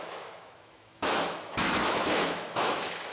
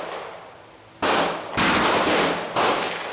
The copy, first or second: first